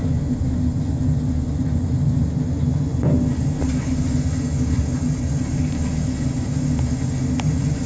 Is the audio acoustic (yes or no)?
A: yes